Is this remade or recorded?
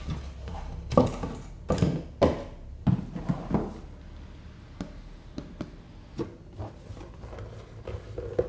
recorded